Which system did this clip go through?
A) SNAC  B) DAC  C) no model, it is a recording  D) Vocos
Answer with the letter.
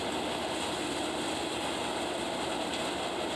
C